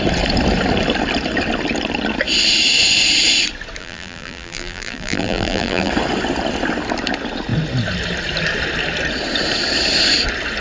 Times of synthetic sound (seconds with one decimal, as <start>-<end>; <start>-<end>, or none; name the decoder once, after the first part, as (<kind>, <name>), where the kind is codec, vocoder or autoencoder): 3.8-5.9 (vocoder, BigVGAN v2)